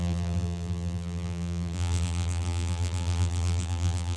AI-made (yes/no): yes